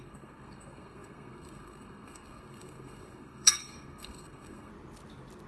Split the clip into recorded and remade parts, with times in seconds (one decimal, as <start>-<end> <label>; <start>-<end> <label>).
0.0-4.7 remade; 4.7-5.5 recorded